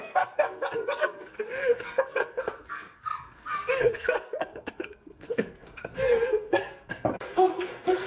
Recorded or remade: remade